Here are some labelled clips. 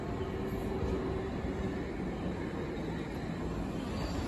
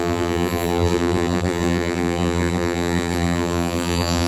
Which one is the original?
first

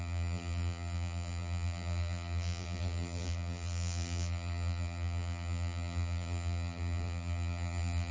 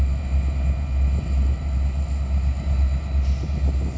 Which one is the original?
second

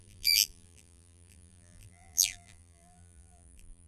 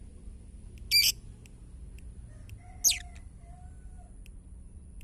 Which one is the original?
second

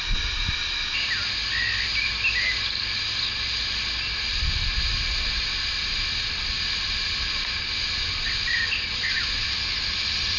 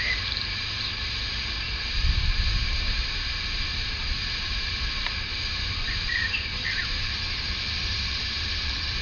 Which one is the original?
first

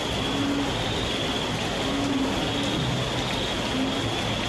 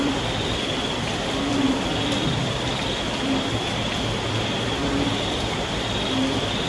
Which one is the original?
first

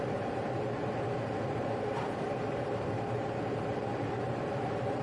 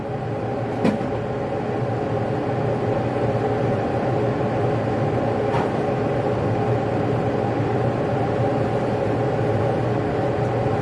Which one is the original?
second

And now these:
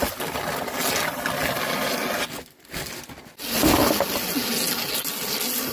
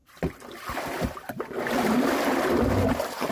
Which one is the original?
first